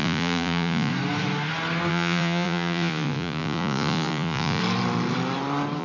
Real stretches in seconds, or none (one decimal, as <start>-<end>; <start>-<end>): 0.9-1.9; 4.6-5.8